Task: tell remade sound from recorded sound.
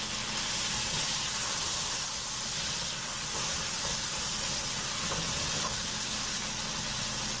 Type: recorded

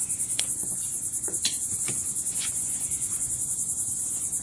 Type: remade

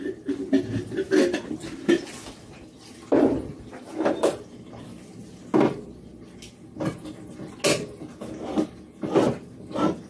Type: recorded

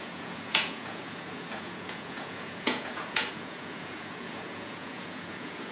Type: remade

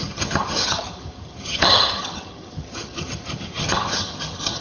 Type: remade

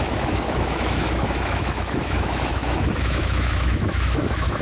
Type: remade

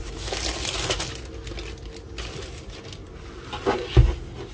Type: recorded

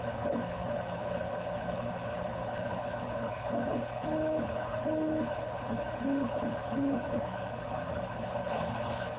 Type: remade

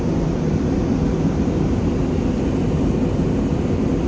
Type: recorded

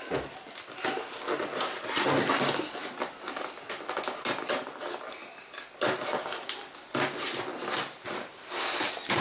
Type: recorded